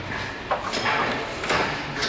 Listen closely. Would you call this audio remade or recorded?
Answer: recorded